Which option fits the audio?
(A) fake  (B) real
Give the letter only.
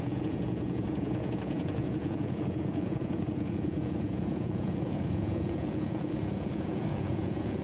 A